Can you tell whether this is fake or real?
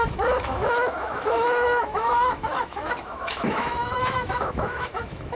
fake